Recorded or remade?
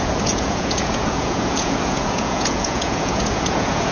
remade